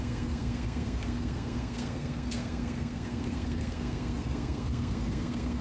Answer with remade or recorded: remade